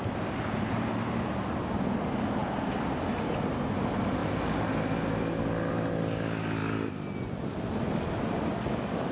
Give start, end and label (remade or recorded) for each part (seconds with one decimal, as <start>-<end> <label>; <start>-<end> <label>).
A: 0.0-9.1 recorded